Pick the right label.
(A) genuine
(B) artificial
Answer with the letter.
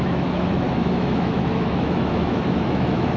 B